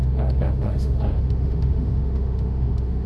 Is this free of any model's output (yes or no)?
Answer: no